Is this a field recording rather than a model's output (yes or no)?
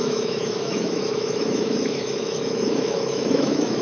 no